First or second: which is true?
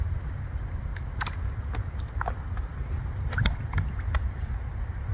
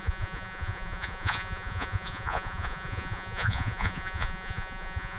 first